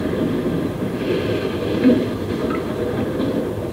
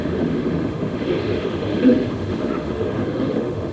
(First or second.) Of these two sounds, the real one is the first